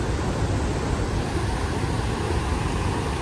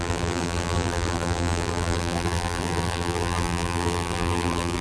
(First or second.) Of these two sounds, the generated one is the second